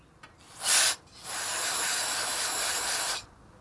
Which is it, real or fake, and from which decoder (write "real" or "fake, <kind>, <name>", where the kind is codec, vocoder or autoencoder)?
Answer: real